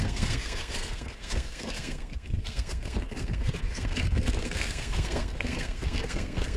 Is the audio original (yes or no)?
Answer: no